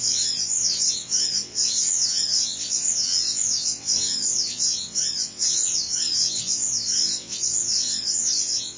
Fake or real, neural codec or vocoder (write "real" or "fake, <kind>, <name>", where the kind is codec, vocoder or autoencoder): fake, vocoder, WaveNeXt